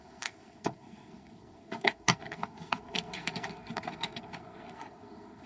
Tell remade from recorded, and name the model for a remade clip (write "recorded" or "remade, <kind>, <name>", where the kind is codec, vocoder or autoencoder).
remade, codec, SNAC